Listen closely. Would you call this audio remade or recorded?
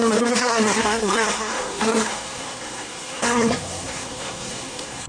remade